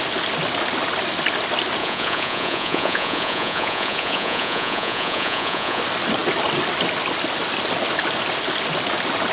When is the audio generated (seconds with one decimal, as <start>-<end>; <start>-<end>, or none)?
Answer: 1.8-5.8